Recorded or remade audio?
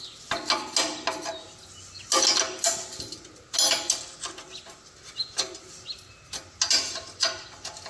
recorded